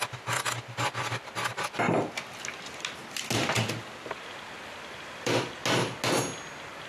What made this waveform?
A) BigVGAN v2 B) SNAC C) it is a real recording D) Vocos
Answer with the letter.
C